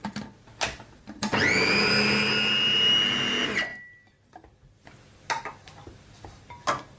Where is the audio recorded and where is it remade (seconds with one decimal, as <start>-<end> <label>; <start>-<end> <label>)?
0.0-7.0 recorded